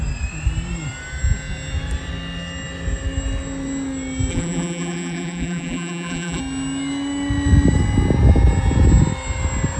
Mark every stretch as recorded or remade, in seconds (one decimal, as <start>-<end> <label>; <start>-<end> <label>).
0.0-4.3 recorded; 4.3-6.4 remade; 6.4-9.8 recorded